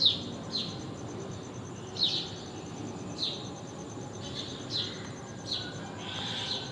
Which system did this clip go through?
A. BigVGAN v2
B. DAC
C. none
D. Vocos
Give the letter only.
C